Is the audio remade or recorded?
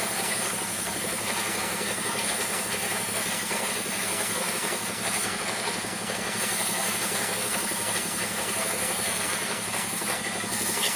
remade